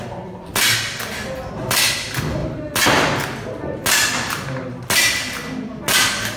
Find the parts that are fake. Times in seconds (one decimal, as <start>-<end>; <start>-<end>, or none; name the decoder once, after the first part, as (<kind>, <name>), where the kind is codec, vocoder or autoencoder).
none